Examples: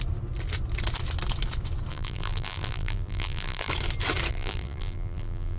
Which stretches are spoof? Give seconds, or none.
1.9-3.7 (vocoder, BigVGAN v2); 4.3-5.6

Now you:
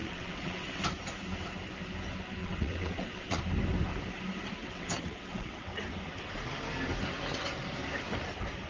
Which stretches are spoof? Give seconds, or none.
0.0-0.8 (vocoder, WaveNeXt); 2.4-3.4; 4.6-5.7

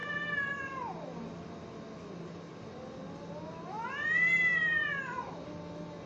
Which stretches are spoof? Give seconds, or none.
none

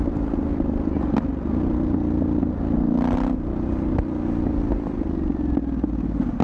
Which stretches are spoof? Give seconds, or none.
none

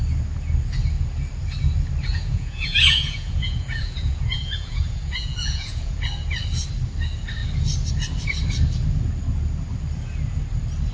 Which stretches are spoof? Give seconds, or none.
2.1-6.0 (vocoder, Vocos)